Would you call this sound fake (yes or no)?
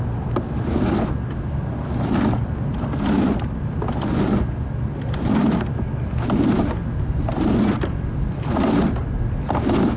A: no